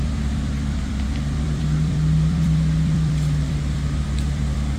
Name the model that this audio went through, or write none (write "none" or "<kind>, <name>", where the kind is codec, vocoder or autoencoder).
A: vocoder, BigVGAN v2